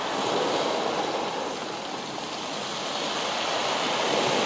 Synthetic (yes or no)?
no